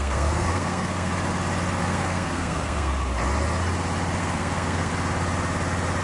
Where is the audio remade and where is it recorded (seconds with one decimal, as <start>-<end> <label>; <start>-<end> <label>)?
0.0-1.1 remade; 1.1-1.8 recorded; 1.8-2.9 remade; 2.9-4.2 recorded; 4.2-4.9 remade; 4.9-6.0 recorded